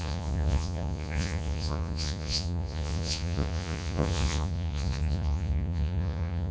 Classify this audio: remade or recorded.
remade